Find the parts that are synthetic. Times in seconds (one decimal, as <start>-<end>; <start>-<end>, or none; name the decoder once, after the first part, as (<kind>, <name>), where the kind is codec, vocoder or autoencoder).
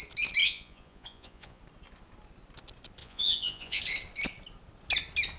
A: 0.4-1.6 (vocoder, Vocos); 3.0-3.8